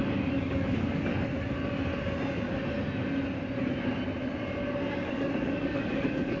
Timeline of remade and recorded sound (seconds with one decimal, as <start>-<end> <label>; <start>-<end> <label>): 0.0-1.1 remade; 1.1-4.9 recorded; 4.9-6.4 remade